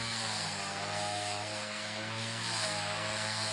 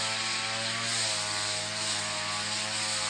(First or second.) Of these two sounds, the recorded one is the second